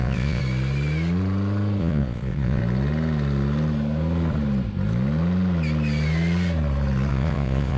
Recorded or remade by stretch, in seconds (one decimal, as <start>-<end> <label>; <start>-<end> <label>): 0.0-0.4 remade; 0.4-1.8 recorded; 1.8-2.6 remade; 2.6-7.1 recorded; 7.1-7.8 remade